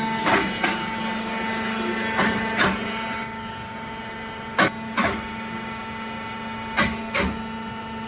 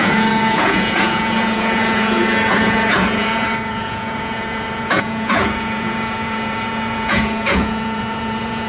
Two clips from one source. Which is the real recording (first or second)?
first